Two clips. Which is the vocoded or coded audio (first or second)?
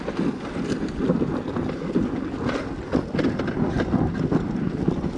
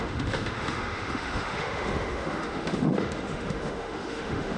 second